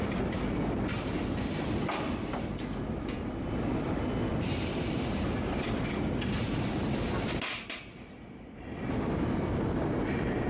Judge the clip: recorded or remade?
remade